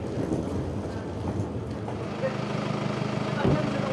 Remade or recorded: recorded